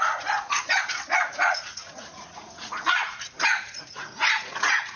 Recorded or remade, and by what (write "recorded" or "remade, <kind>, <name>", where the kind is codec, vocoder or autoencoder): remade, vocoder, Vocos